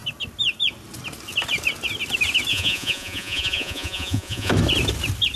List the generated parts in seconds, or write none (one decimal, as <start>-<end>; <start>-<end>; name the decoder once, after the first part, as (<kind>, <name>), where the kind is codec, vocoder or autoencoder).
2.5-4.5 (vocoder, Vocos)